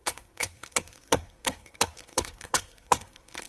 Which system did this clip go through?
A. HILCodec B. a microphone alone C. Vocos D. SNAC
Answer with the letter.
D